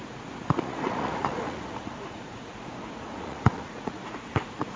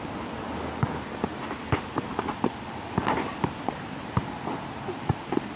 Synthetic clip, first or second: first